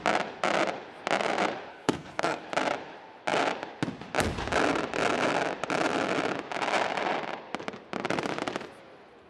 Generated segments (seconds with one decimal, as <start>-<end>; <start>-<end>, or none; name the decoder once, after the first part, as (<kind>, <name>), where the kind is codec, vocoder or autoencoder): 1.7-2.4 (codec, SNAC)